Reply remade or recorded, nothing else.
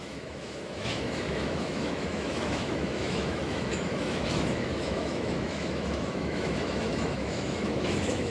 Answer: remade